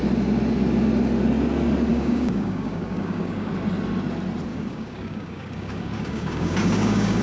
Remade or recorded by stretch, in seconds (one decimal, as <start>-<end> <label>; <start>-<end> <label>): 0.0-1.9 recorded; 1.9-3.5 remade; 3.5-4.5 recorded; 4.5-7.2 remade